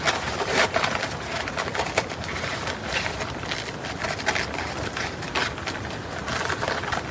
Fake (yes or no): no